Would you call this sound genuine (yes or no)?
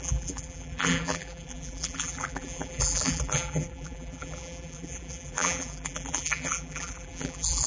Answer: no